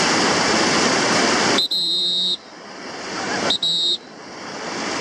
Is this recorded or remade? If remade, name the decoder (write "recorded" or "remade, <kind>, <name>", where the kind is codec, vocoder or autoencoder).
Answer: recorded